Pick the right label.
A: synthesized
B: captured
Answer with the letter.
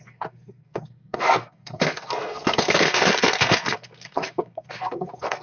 A